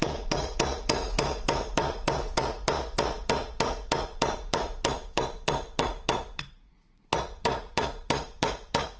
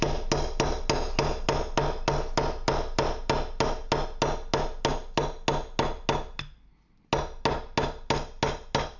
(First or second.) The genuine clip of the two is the second